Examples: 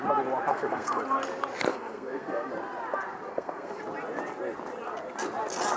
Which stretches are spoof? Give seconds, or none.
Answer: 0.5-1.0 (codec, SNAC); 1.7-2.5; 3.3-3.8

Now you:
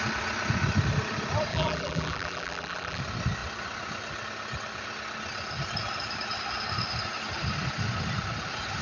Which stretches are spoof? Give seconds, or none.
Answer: 1.5-3.0 (vocoder, BigVGAN v2)

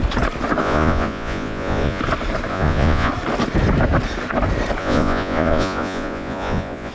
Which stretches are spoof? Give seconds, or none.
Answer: 0.6-2.0 (vocoder, Vocos); 2.5-3.1; 4.8-6.9

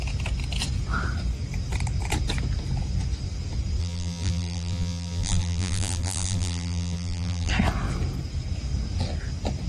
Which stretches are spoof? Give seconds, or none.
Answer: 3.8-7.5 (vocoder, BigVGAN v2)

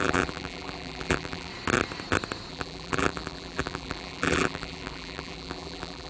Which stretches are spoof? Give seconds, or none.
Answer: 0.0-1.5 (vocoder, BigVGAN v2); 2.5-6.1

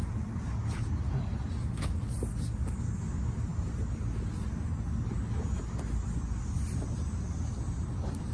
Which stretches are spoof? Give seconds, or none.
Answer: none

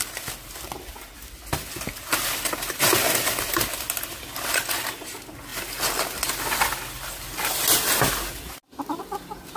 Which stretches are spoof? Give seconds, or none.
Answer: none

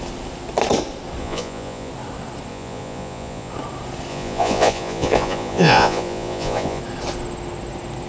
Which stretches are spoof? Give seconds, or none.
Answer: 1.2-1.9 (vocoder, Vocos); 2.5-3.5; 4.1-6.8